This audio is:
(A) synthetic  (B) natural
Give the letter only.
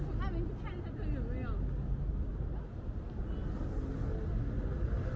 B